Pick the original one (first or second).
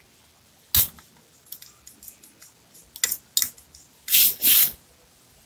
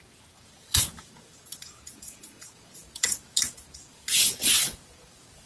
first